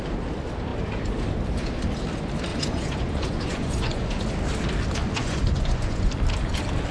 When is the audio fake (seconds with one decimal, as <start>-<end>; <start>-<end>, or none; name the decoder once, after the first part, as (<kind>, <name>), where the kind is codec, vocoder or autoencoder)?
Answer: 2.5-4.2 (vocoder, Vocos); 5.0-6.1